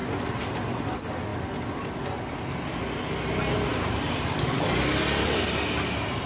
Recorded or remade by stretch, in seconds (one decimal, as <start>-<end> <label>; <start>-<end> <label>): 0.0-3.7 recorded; 3.7-4.2 remade; 4.2-6.3 recorded